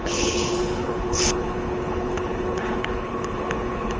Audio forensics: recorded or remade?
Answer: remade